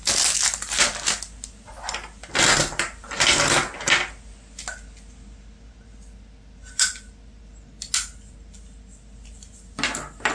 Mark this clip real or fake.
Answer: real